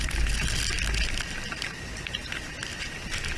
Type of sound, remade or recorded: recorded